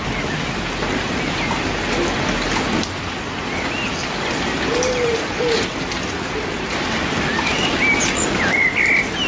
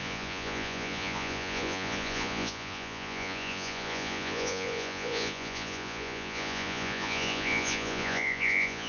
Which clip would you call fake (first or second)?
second